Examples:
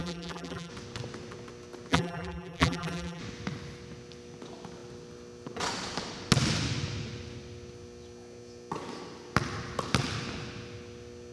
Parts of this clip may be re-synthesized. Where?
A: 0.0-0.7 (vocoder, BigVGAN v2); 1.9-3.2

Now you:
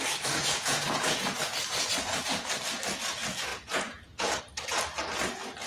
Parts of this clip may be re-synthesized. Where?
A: 0.4-1.3 (vocoder, Vocos); 3.5-4.4

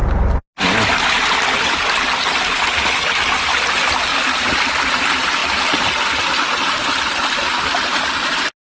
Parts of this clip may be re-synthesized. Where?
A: none

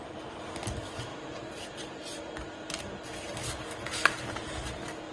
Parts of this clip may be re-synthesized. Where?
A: 1.1-2.3 (vocoder, BigVGAN v2)

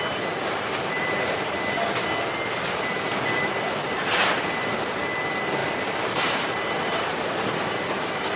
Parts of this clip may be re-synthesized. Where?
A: none

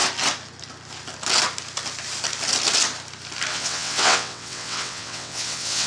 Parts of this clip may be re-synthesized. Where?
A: 3.5-5.9 (vocoder, WaveNeXt)

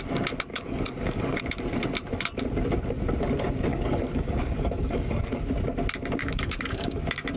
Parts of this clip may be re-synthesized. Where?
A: 0.5-1.4 (codec, DAC); 3.7-5.4; 6.2-7.0